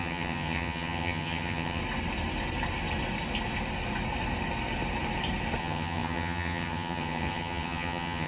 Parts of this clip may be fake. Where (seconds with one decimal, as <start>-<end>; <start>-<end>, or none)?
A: 0.0-1.8; 5.6-8.3